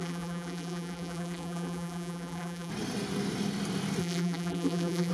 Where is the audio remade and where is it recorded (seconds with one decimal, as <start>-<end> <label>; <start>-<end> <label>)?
0.0-2.7 remade; 2.7-4.0 recorded; 4.0-5.1 remade